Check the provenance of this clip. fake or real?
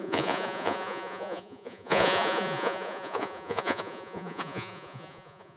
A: fake